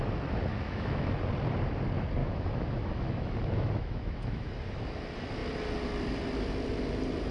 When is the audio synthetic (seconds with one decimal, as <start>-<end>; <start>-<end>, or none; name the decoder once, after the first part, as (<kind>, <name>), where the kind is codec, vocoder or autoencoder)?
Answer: 0.5-1.1 (autoencoder, DAC-VAE); 2.2-4.5